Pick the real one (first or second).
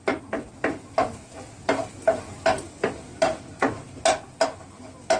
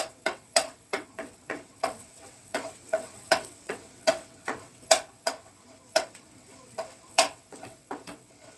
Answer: first